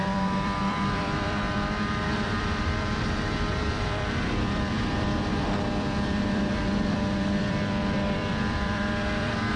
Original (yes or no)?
no